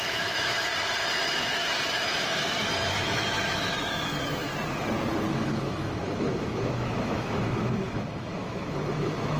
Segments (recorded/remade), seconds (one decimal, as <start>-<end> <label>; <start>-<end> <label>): 0.0-0.7 remade; 0.7-1.2 recorded; 1.2-4.5 remade; 4.5-5.3 recorded; 5.3-9.4 remade